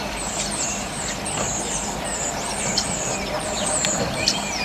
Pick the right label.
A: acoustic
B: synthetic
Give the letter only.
B